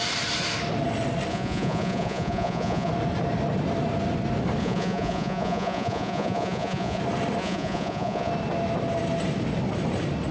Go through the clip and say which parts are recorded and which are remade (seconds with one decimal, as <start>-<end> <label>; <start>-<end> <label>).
0.0-1.3 recorded; 1.3-2.9 remade; 2.9-4.6 recorded; 4.6-7.0 remade; 7.0-7.4 recorded; 7.4-8.3 remade; 8.3-10.3 recorded